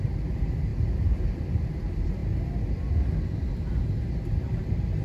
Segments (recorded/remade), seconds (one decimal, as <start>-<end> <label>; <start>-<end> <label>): 0.0-2.2 remade; 2.2-3.8 recorded; 3.8-5.0 remade